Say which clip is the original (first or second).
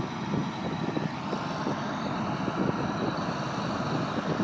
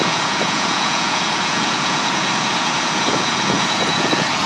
first